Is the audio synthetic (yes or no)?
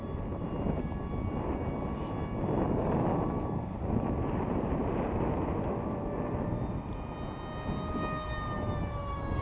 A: no